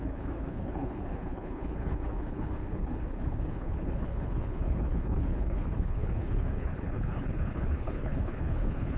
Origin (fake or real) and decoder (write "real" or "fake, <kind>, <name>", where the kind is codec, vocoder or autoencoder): fake, codec, HILCodec